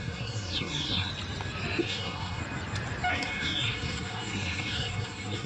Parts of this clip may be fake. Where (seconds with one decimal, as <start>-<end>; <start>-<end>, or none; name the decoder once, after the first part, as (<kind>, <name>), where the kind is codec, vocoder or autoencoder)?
0.0-1.1 (codec, SNAC); 1.8-2.4; 3.1-5.5